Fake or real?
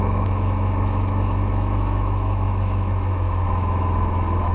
fake